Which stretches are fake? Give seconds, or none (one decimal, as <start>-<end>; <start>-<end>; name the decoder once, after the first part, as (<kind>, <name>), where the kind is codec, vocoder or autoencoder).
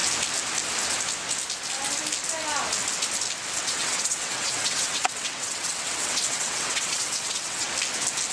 3.6-7.7 (vocoder, WaveNeXt)